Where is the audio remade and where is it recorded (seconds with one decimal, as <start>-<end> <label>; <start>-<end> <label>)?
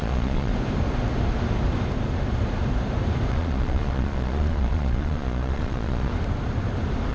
0.0-0.5 remade; 0.5-3.3 recorded; 3.3-6.1 remade; 6.1-7.1 recorded